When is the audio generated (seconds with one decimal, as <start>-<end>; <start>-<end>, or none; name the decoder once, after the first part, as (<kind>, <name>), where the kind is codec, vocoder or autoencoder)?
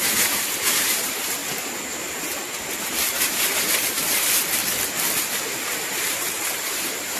0.0-4.6 (vocoder, BigVGAN v2); 5.3-7.2